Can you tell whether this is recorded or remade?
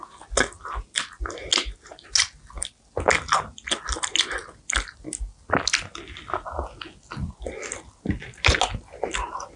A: recorded